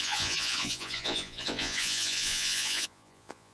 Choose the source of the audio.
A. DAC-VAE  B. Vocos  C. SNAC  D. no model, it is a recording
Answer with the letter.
B